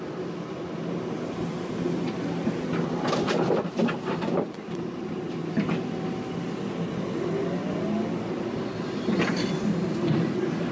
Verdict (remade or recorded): recorded